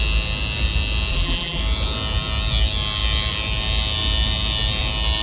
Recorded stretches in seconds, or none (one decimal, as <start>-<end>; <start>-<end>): 0.0-1.1; 1.6-5.2